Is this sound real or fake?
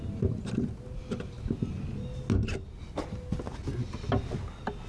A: real